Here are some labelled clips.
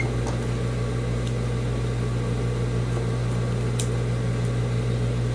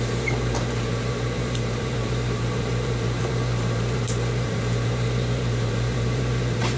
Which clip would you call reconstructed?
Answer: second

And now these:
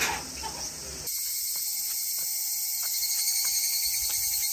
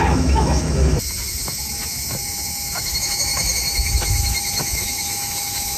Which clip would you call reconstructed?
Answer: second